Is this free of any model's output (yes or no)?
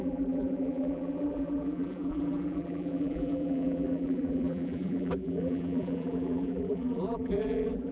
no